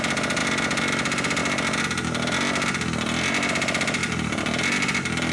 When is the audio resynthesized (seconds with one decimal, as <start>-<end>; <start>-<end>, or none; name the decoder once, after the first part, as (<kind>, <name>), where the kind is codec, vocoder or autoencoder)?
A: none